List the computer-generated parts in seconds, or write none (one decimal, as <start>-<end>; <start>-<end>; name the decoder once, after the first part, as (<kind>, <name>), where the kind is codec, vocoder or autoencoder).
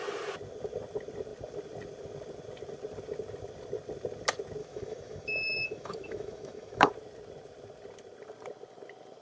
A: 4.6-6.9 (autoencoder, DAC-VAE)